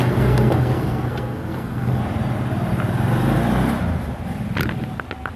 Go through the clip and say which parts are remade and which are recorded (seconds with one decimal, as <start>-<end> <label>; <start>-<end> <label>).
0.0-2.0 remade; 2.0-5.4 recorded